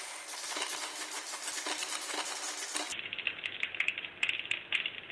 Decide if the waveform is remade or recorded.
recorded